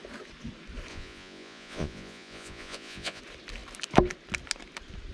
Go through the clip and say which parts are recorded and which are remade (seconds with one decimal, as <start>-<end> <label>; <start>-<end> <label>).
0.0-0.9 recorded; 0.9-3.2 remade; 3.2-5.1 recorded